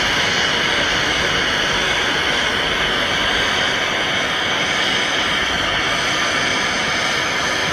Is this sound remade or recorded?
recorded